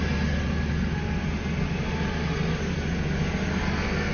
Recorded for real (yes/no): yes